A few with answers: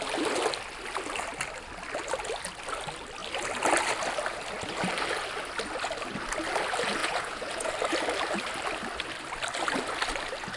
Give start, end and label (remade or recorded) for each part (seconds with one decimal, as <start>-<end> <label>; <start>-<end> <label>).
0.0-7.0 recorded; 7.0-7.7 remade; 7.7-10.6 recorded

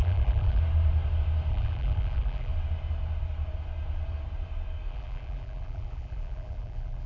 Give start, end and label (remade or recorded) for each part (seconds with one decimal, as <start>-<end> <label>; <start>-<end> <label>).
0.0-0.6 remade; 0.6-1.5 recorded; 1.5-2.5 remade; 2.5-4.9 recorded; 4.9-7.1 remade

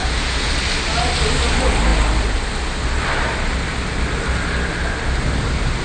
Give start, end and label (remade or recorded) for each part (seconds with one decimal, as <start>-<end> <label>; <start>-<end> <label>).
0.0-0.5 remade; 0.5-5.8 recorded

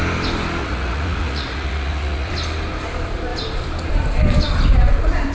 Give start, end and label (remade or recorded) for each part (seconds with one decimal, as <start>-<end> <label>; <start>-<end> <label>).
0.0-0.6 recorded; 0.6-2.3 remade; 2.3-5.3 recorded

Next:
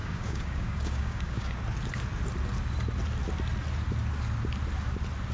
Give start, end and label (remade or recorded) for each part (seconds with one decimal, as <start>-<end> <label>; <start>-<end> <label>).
0.0-1.6 remade; 1.6-5.3 recorded